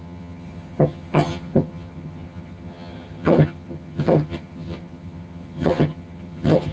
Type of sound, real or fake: fake